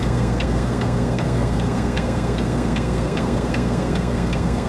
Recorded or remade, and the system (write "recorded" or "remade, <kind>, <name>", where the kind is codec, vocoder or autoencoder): remade, codec, SNAC